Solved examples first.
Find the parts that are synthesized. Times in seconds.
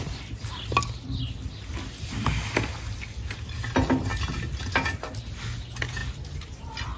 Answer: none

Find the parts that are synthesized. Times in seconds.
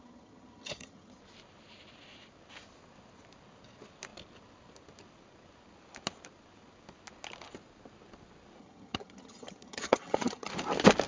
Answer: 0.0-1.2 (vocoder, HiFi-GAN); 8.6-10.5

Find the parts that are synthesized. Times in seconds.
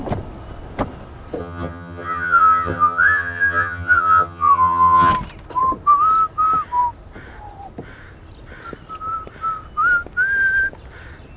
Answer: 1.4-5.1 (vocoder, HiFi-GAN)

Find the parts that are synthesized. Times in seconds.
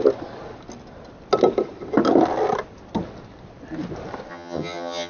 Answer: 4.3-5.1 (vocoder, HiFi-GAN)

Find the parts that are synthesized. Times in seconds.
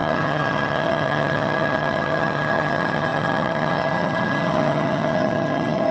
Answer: 0.0-5.9 (vocoder, HiFi-GAN)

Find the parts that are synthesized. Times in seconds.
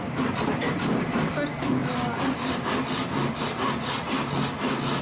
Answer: none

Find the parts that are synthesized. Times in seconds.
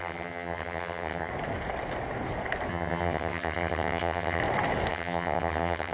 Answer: 0.0-1.3 (vocoder, HiFi-GAN); 2.7-4.4; 4.9-5.9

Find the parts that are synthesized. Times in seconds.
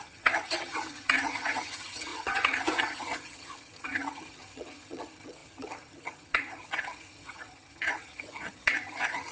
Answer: 0.0-9.3 (vocoder, HiFi-GAN)